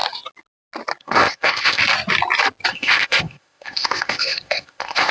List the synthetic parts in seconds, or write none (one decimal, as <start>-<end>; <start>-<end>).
1.0-1.8; 2.7-5.1